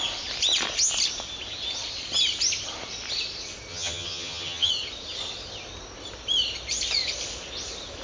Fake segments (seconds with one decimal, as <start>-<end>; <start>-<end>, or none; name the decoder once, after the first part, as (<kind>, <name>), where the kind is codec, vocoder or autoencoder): 3.7-4.7 (vocoder, HiFi-GAN)